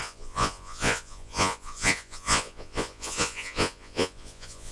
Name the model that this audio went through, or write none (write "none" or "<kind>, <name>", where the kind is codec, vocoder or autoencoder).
vocoder, Vocos